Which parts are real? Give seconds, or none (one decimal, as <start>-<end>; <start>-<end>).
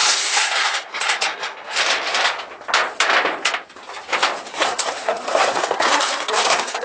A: 1.8-4.5